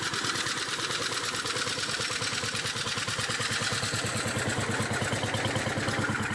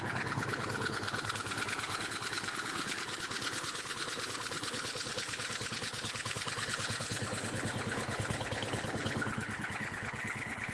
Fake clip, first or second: second